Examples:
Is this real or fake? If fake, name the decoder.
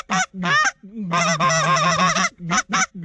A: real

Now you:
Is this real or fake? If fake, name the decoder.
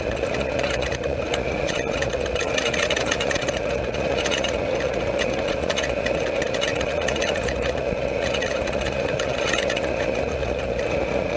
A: fake, vocoder, Vocos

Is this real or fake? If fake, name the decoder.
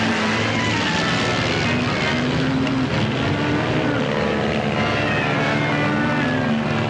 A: real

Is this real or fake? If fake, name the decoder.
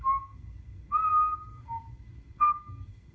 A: fake, codec, SNAC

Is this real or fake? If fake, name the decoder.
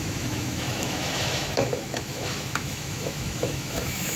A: fake, autoencoder, DAC-VAE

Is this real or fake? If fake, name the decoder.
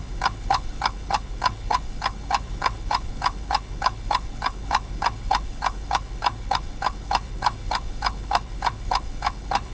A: fake, codec, HILCodec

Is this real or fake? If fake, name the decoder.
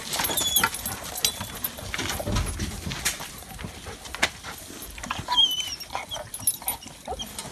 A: real